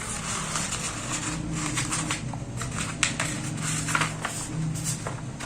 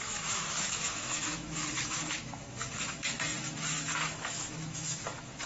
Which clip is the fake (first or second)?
second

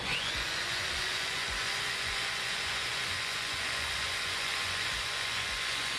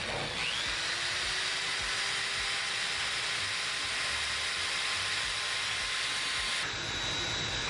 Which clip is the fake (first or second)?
first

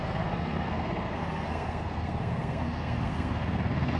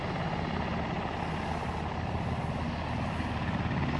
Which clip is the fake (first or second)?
first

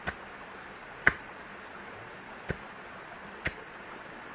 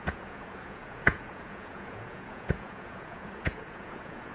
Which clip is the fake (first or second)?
second